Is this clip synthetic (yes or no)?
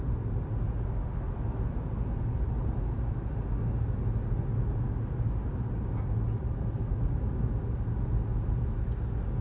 no